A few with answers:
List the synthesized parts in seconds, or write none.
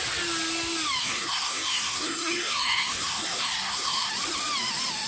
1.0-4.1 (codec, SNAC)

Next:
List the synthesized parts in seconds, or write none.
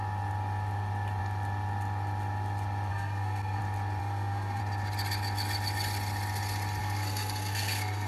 2.9-3.6 (codec, SNAC); 4.0-4.6; 6.8-8.1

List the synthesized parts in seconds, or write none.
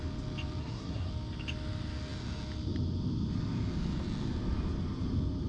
0.6-1.1 (codec, SNAC)